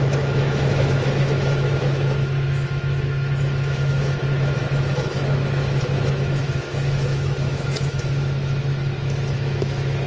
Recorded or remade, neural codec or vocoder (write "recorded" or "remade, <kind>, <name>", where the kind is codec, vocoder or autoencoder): remade, autoencoder, DAC-VAE